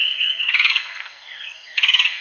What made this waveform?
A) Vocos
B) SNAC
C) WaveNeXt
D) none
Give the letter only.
B